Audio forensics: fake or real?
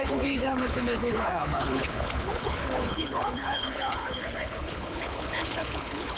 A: fake